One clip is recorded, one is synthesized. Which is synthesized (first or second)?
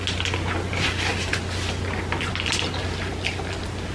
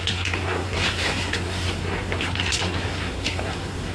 second